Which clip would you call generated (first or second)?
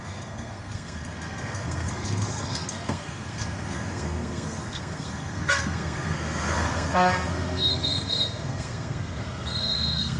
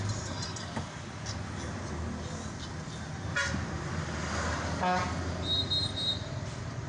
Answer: first